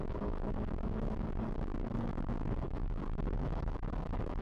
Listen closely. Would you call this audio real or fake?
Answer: fake